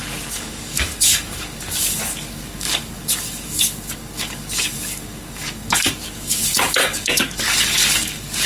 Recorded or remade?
remade